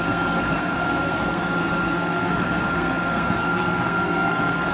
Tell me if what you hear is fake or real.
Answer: fake